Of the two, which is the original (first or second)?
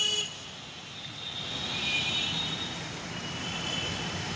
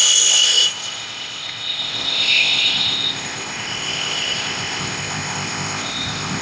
first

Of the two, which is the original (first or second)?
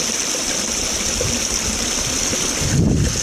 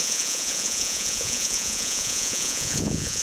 first